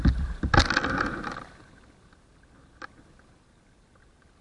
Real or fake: real